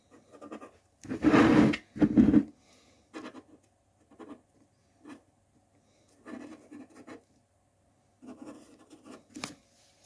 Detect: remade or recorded recorded